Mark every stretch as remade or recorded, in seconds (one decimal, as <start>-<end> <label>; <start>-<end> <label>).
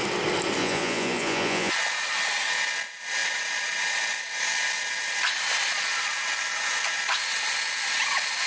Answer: 0.0-0.6 recorded; 0.6-1.7 remade; 1.7-8.5 recorded